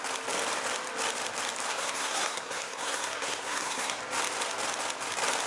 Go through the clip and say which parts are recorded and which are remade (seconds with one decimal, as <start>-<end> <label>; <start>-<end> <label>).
0.0-1.7 recorded; 1.7-4.0 remade; 4.0-5.5 recorded